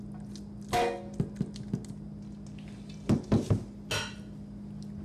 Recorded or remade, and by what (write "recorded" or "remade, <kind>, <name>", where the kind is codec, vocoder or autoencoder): recorded